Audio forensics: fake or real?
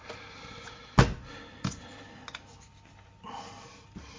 real